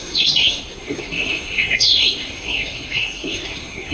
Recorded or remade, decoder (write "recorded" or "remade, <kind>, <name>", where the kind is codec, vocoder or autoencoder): remade, codec, SNAC